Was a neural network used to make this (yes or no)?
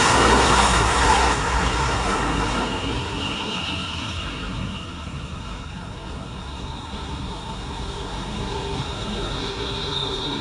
yes